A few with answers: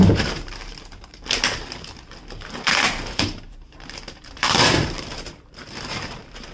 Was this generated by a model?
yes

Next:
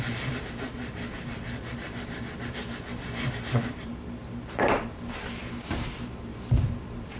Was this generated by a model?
yes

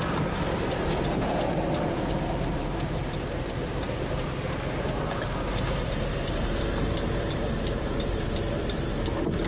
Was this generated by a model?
yes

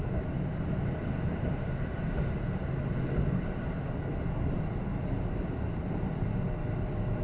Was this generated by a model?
no